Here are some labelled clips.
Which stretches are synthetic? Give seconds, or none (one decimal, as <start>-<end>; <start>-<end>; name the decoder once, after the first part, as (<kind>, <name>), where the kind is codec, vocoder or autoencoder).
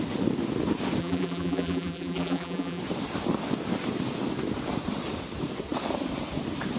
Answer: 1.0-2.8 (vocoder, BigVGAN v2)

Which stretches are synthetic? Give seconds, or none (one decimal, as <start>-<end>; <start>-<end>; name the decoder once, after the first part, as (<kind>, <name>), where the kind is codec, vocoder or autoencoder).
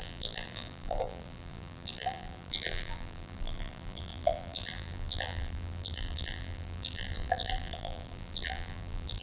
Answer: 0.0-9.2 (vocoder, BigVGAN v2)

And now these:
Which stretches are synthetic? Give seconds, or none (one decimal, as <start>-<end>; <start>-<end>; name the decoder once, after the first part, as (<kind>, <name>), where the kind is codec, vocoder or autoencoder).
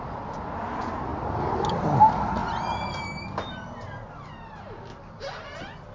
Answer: 1.1-1.8 (vocoder, BigVGAN v2)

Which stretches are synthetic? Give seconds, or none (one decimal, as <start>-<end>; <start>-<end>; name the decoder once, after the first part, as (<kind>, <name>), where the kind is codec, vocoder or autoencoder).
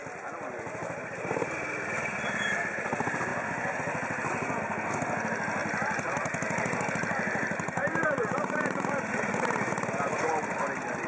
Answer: 7.8-9.2 (vocoder, BigVGAN v2)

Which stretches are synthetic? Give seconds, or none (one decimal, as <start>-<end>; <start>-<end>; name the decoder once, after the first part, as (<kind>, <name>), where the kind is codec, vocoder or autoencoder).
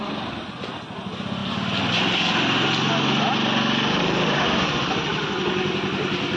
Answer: none